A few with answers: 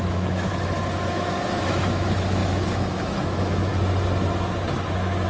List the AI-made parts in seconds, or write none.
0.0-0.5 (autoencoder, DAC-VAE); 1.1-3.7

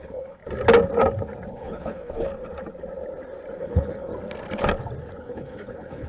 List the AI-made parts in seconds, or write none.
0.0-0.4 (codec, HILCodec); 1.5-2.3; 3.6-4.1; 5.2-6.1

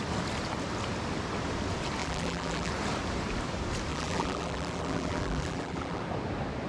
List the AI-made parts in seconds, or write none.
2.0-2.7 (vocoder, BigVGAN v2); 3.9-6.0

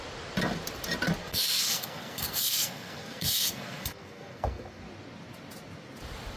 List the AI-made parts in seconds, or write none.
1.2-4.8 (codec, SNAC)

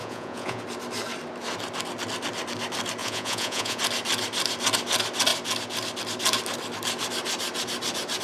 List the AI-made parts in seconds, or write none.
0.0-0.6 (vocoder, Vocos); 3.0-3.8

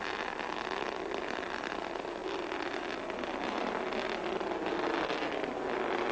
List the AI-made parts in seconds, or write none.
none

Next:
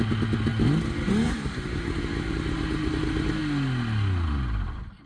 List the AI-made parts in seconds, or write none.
none

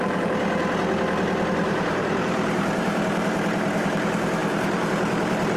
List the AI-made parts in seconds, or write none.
0.0-0.4 (vocoder, BigVGAN v2); 1.6-5.6